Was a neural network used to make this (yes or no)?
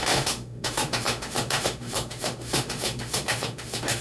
yes